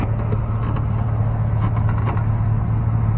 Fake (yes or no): no